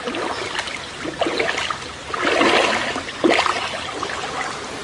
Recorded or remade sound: recorded